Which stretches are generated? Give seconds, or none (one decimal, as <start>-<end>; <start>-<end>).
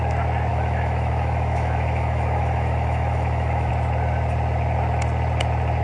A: 0.5-3.7